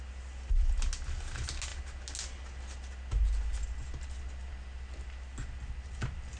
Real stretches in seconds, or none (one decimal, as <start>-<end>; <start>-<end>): 0.0-6.4